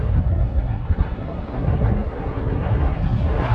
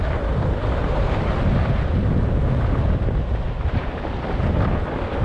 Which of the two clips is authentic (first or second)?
second